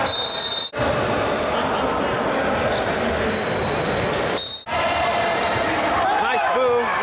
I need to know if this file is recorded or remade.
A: recorded